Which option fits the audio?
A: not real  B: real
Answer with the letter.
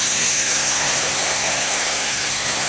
A